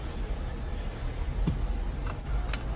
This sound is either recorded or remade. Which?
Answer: recorded